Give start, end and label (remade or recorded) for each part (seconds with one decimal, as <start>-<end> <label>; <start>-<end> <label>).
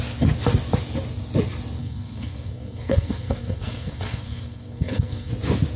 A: 0.0-1.8 recorded; 1.8-5.3 remade; 5.3-5.8 recorded